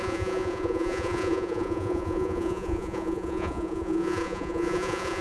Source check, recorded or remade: remade